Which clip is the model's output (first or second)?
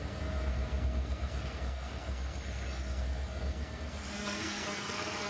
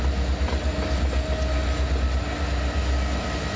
first